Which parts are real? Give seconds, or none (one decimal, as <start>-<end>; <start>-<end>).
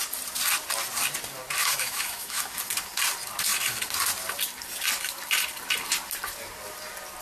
0.0-1.6; 2.6-7.2